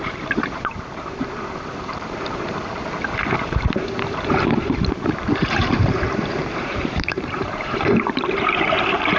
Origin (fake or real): fake